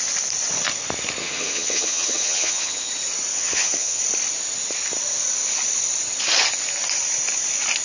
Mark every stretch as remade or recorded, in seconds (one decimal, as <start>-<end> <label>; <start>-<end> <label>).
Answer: 0.0-1.2 recorded; 1.2-2.9 remade; 2.9-3.3 recorded; 3.3-4.0 remade; 4.0-7.8 recorded